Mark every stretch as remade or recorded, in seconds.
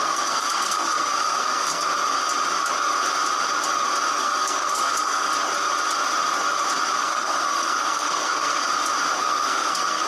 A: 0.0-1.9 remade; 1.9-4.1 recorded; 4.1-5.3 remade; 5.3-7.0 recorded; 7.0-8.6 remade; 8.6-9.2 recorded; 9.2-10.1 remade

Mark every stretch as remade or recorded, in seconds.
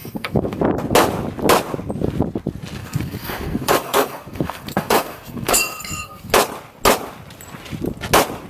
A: 0.0-0.6 remade; 0.6-2.8 recorded; 2.8-6.3 remade; 6.3-8.5 recorded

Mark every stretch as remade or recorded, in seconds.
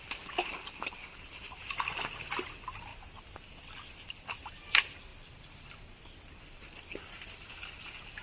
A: 0.0-8.2 recorded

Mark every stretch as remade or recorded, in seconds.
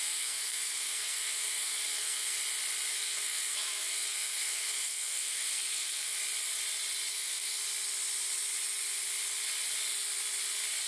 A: 0.0-2.4 remade; 2.4-2.9 recorded; 2.9-6.2 remade; 6.2-7.1 recorded; 7.1-7.6 remade; 7.6-10.9 recorded